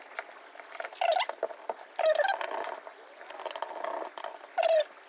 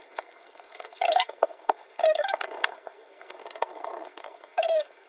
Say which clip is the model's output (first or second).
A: second